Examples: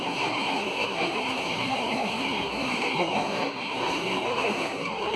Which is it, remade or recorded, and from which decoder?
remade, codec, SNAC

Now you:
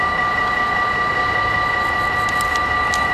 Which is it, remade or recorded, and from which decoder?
recorded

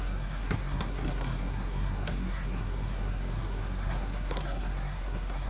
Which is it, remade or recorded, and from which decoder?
remade, codec, SNAC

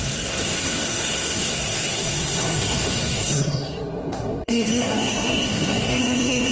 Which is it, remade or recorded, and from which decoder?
remade, codec, SNAC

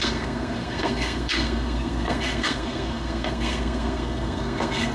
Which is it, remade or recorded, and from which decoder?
remade, codec, SNAC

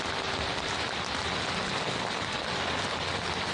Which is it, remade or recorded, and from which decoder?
recorded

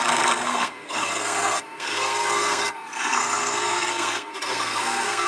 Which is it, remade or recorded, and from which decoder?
remade, codec, SNAC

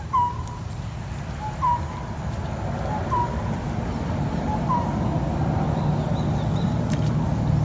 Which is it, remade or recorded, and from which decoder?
recorded